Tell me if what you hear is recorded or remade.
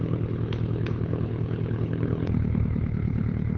remade